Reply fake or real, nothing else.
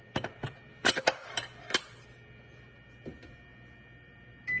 real